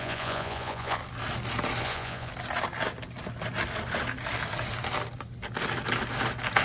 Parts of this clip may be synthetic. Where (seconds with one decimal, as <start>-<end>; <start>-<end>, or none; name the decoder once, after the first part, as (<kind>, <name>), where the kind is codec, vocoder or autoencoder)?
0.0-1.0 (vocoder, Vocos); 1.8-2.3